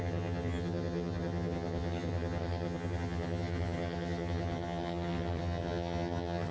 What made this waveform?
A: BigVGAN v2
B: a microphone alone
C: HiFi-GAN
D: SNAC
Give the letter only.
C